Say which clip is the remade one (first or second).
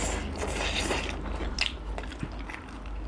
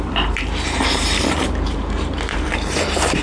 second